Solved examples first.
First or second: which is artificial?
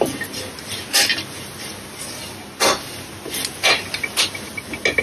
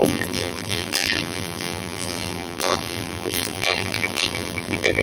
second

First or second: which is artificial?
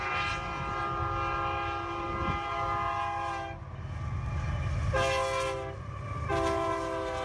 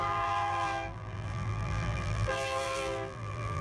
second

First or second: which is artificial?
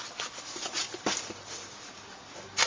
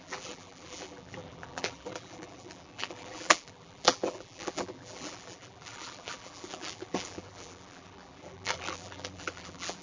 second